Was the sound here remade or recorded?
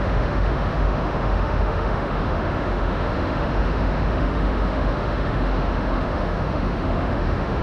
remade